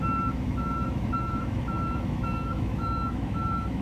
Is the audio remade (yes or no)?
yes